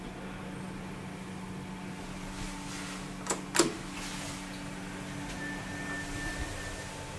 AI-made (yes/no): no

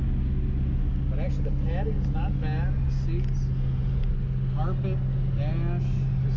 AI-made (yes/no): no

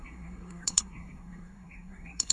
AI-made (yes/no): yes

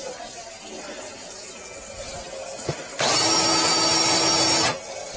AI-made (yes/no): no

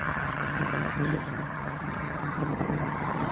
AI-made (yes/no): yes